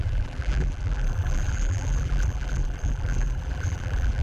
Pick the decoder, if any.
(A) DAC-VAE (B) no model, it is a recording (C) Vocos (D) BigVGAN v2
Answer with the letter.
D